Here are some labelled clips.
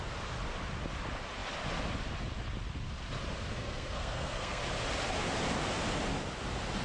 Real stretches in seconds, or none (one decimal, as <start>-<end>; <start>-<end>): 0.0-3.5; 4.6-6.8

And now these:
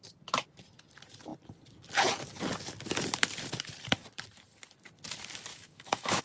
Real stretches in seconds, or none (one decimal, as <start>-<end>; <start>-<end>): 0.0-5.5

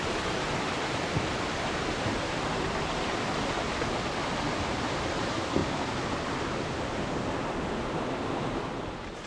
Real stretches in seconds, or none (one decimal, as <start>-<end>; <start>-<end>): 0.0-9.3